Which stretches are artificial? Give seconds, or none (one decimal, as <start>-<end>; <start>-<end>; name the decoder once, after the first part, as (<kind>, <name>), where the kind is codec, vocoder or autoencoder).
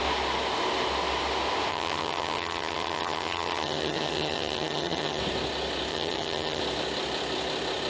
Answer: 1.7-5.2 (vocoder, HiFi-GAN); 5.9-6.6